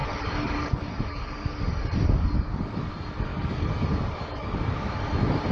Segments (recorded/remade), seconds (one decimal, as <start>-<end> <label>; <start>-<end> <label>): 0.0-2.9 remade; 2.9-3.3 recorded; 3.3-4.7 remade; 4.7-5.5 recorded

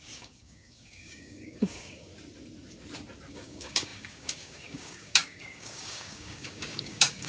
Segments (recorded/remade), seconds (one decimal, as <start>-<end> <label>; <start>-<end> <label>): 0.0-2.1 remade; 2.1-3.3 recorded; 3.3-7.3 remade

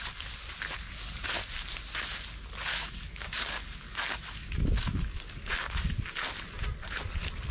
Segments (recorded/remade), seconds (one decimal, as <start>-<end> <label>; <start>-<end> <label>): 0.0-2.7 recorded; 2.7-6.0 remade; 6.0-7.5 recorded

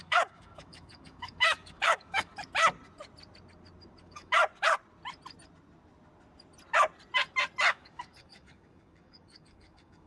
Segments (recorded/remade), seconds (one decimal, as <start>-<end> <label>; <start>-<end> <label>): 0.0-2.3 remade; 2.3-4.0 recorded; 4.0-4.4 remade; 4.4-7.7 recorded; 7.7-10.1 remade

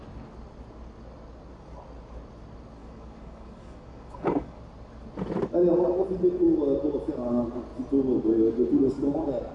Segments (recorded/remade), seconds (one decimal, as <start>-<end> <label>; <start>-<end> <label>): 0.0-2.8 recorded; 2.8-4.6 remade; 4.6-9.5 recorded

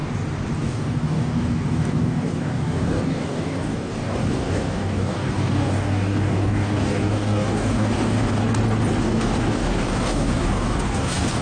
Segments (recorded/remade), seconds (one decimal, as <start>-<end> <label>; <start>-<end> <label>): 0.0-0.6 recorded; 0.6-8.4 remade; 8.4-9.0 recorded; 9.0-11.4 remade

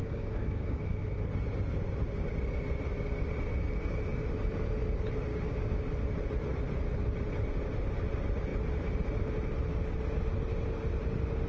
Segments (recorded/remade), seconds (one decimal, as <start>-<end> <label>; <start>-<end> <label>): 0.0-0.8 remade; 0.8-5.3 recorded; 5.3-5.8 remade; 5.8-11.5 recorded

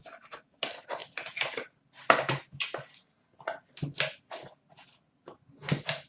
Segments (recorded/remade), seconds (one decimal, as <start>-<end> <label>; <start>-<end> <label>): 0.0-0.6 remade; 0.6-6.1 recorded